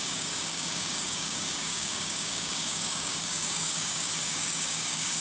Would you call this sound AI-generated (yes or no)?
yes